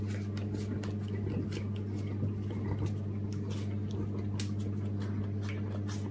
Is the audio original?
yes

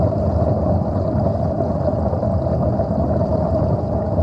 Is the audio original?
no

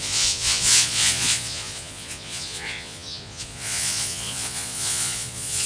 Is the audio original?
no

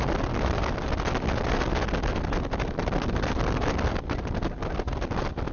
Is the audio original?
yes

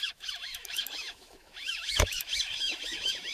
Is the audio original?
no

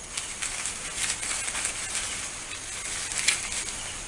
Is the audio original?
yes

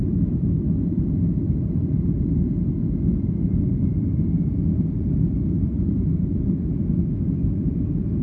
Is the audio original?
yes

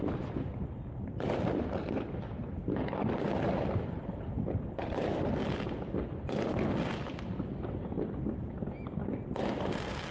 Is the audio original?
yes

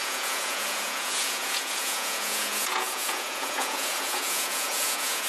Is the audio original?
no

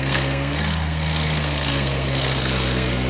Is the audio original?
no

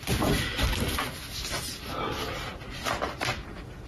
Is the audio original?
yes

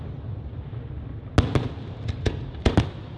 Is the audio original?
yes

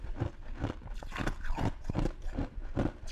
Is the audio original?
yes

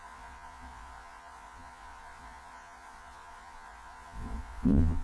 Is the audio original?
no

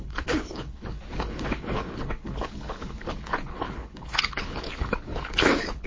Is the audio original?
no